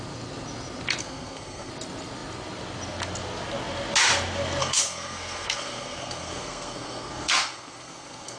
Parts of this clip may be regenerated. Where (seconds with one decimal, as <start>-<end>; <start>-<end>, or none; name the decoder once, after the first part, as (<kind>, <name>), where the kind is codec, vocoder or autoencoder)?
1.0-1.7 (codec, SNAC); 4.6-8.4